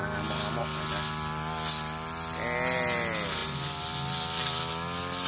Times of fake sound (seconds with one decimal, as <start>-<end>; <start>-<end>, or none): none